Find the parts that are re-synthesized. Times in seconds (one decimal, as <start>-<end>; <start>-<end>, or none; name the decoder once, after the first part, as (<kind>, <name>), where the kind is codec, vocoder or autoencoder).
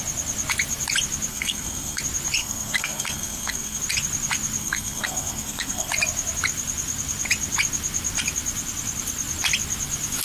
1.3-2.0 (codec, SNAC); 2.4-3.8; 4.6-5.9